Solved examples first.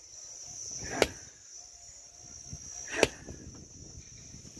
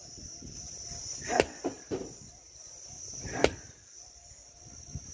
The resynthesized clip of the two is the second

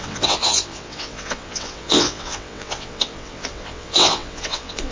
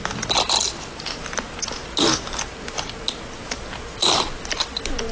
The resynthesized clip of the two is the first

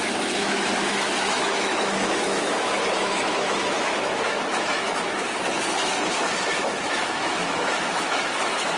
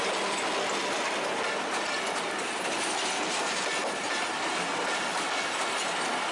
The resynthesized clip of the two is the first